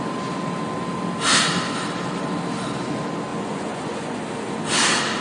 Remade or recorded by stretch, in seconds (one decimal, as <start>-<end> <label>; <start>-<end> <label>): 0.0-3.3 recorded; 3.3-4.2 remade; 4.2-5.2 recorded